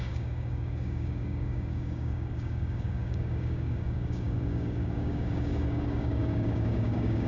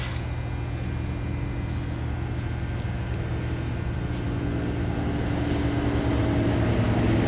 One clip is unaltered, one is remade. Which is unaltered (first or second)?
second